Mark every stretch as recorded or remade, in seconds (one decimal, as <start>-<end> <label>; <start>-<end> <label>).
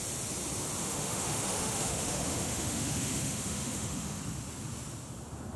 0.0-0.8 recorded; 0.8-4.2 remade; 4.2-5.6 recorded